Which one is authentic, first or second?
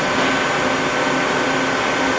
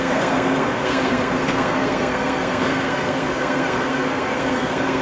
first